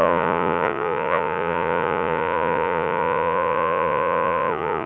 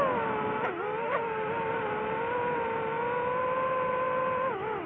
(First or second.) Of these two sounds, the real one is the second